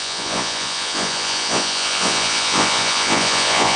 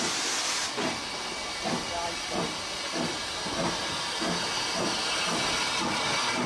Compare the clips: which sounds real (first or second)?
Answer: second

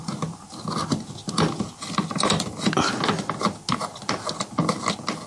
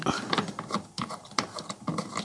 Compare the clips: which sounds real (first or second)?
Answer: first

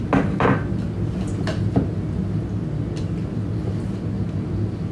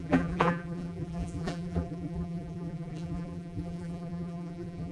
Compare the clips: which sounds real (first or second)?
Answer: first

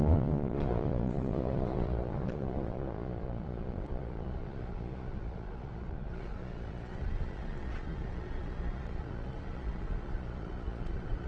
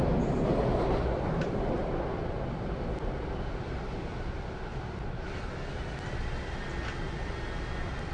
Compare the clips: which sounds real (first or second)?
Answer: second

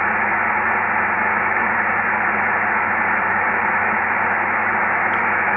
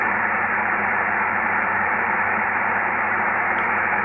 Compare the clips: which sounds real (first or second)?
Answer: first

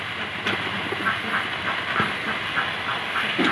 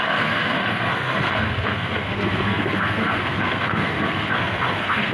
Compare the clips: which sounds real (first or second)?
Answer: first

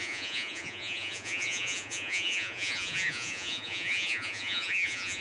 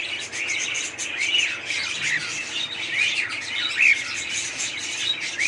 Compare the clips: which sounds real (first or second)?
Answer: second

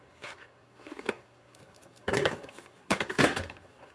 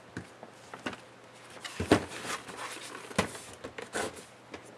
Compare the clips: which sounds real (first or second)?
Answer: second